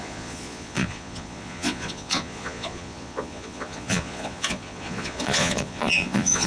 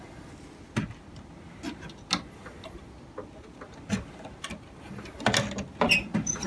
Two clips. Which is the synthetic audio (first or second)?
first